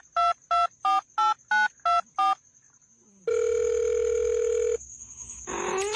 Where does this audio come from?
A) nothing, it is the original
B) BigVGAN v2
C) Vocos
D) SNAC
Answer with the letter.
A